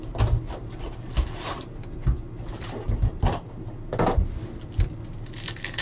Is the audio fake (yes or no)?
no